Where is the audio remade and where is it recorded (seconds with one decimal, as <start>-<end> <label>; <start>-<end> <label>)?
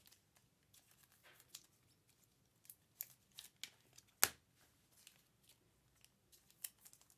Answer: 0.0-7.2 recorded